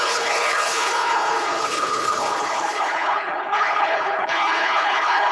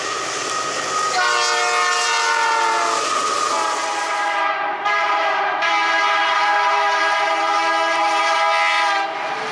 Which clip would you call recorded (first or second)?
second